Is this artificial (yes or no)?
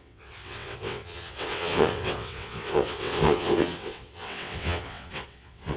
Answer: yes